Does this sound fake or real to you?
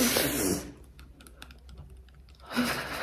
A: real